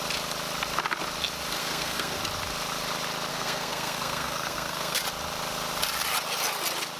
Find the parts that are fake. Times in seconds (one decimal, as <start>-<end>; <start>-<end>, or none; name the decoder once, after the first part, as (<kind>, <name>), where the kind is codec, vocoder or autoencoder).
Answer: 1.6-2.2 (codec, SNAC); 3.3-5.0